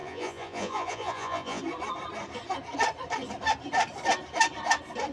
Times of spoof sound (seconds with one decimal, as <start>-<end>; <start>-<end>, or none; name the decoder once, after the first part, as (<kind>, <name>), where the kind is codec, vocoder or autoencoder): 0.0-1.6 (vocoder, Vocos)